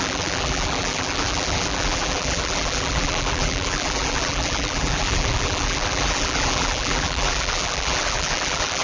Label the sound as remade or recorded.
remade